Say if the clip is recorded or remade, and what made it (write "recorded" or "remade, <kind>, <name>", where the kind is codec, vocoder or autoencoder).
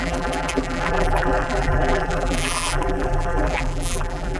remade, vocoder, BigVGAN v2